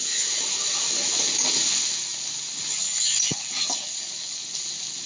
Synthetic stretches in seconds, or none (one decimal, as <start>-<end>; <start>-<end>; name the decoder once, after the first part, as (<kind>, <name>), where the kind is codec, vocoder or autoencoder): none